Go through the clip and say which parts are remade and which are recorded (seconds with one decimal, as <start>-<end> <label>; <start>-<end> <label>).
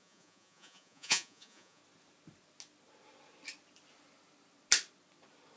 0.0-1.8 remade; 1.8-5.6 recorded